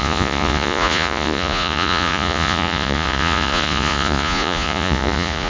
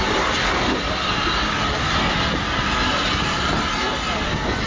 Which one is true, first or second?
second